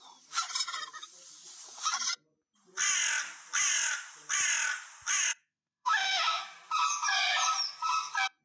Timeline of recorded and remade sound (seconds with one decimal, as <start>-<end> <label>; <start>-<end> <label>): 0.0-5.4 recorded; 5.4-6.4 remade; 6.4-8.4 recorded